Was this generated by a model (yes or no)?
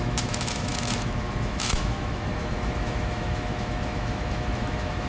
yes